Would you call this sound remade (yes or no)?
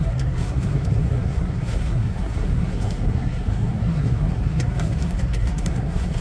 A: yes